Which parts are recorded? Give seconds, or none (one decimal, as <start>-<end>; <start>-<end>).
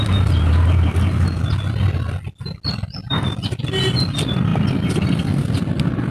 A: 0.0-6.1